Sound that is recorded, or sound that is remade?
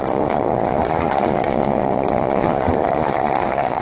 remade